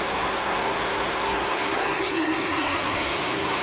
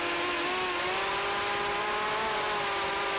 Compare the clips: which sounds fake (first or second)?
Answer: first